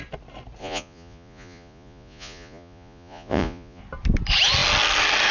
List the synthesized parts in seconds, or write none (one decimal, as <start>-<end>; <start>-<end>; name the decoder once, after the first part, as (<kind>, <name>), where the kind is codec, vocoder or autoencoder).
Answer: 0.6-3.8 (vocoder, Vocos)